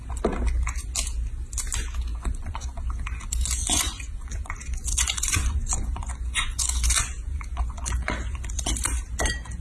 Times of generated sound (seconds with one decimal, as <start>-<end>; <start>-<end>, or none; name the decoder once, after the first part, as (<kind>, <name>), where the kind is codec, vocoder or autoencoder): 2.1-2.8 (vocoder, Vocos); 3.6-8.7